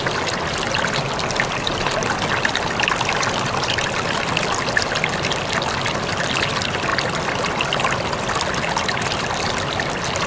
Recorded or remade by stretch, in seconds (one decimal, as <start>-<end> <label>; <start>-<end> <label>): 0.0-10.3 recorded